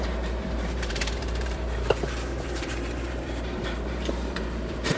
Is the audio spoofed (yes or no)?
yes